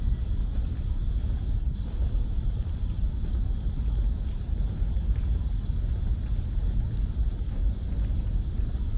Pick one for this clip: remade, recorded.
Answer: recorded